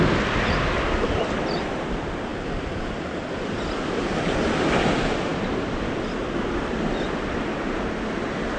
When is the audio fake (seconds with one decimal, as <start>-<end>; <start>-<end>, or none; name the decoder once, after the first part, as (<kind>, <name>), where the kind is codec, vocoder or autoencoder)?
none